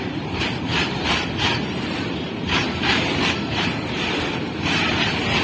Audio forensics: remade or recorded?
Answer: remade